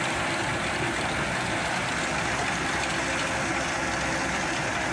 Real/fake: real